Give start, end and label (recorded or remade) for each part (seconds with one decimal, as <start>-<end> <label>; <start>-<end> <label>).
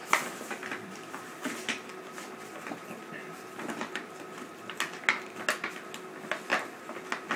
0.0-7.4 recorded